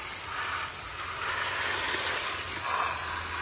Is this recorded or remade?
recorded